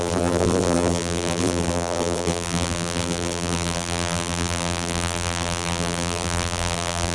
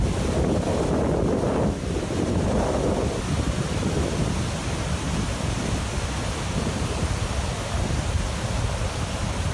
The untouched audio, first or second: second